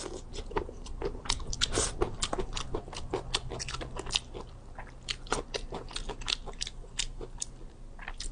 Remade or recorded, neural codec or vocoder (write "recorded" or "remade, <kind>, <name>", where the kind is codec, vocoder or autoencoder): recorded